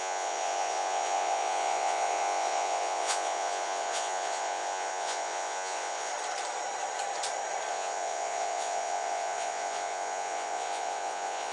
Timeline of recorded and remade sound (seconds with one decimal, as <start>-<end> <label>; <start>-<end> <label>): 0.0-6.1 remade; 6.1-7.7 recorded; 7.7-11.5 remade